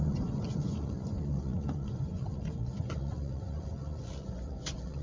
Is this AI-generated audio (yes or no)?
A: yes